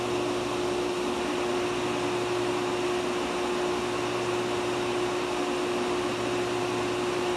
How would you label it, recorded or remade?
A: recorded